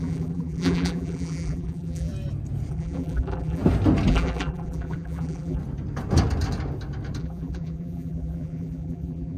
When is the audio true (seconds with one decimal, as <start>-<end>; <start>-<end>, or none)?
2.1-2.7; 3.6-4.1; 5.6-7.2